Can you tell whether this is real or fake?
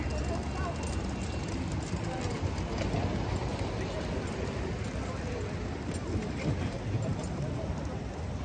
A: real